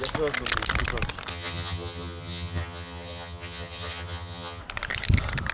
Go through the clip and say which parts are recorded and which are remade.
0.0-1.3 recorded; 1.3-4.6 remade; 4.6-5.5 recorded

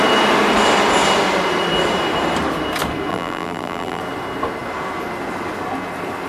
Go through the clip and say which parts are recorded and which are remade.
0.0-3.1 recorded; 3.1-4.0 remade; 4.0-6.3 recorded

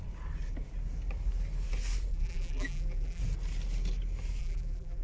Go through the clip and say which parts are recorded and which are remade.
0.0-2.1 recorded; 2.1-3.2 remade; 3.2-4.4 recorded; 4.4-5.0 remade

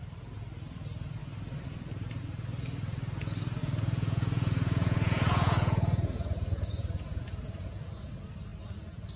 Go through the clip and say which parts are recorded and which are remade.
0.0-3.6 recorded; 3.6-8.1 remade; 8.1-9.2 recorded

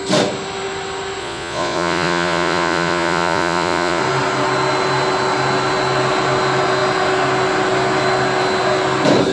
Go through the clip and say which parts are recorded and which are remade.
0.0-1.2 recorded; 1.2-4.0 remade; 4.0-9.3 recorded

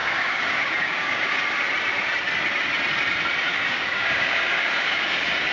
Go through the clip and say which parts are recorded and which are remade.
0.0-1.3 remade; 1.3-3.5 recorded; 3.5-5.5 remade

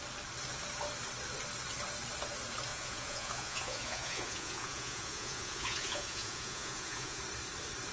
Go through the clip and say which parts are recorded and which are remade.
0.0-2.7 recorded; 2.7-7.2 remade; 7.2-7.9 recorded

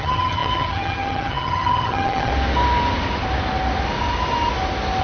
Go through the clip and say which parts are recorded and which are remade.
0.0-2.3 remade; 2.3-5.0 recorded